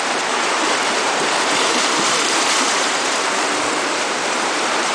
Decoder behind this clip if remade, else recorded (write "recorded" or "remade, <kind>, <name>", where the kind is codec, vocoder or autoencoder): remade, vocoder, BigVGAN v2